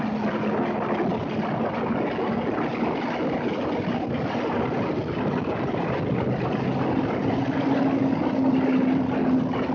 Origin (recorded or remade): recorded